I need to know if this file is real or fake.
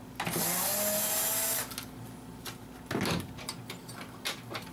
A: real